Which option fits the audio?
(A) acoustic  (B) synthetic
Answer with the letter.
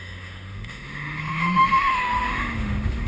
B